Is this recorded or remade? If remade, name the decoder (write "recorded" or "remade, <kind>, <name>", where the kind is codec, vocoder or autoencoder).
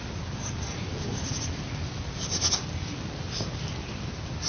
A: recorded